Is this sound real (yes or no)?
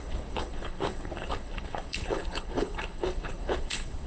no